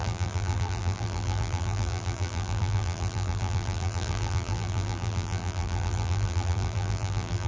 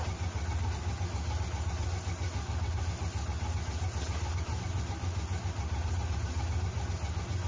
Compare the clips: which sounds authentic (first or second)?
second